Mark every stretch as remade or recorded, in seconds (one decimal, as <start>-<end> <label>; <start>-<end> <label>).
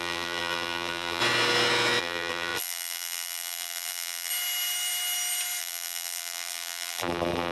0.0-1.2 remade; 1.2-2.0 recorded; 2.0-4.3 remade; 4.3-5.6 recorded; 5.6-7.5 remade